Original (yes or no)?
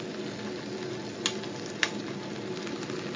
yes